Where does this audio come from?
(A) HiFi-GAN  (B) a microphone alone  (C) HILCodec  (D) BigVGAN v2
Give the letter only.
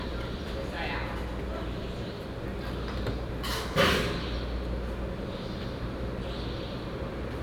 B